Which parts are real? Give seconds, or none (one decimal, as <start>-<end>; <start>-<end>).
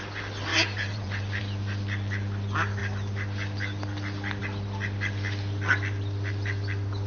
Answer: 0.0-0.5; 1.4-7.1